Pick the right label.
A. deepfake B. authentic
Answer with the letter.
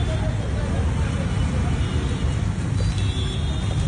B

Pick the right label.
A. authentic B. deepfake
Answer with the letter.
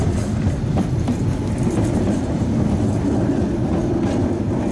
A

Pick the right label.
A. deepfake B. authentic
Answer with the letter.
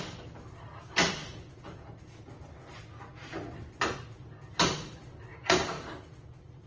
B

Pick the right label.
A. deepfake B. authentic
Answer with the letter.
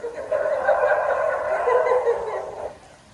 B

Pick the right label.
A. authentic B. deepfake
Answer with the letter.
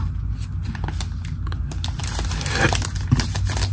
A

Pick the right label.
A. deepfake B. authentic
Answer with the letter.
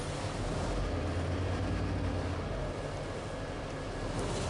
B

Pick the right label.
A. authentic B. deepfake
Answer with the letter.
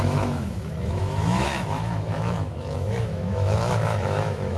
B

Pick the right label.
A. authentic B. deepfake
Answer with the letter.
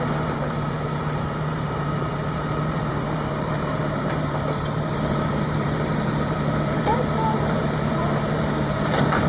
B